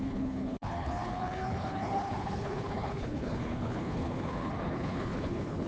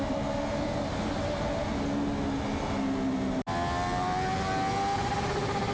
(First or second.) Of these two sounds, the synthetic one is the first